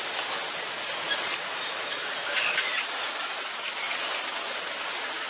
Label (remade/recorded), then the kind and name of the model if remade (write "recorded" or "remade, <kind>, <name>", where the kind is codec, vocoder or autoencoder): recorded